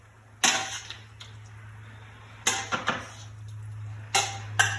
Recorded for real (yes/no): yes